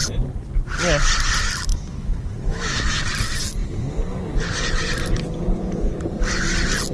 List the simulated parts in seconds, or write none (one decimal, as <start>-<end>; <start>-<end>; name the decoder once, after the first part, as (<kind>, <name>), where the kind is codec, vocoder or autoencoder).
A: 1.7-3.0 (autoencoder, DAC-VAE)